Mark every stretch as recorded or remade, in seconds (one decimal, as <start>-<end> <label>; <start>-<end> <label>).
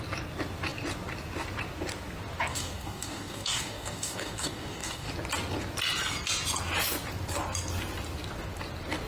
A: 0.0-2.5 recorded; 2.5-5.1 remade; 5.1-9.1 recorded